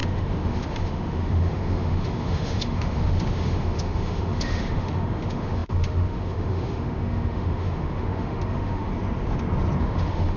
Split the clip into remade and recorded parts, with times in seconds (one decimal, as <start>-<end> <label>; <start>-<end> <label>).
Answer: 0.0-8.9 remade; 8.9-9.8 recorded; 9.8-10.4 remade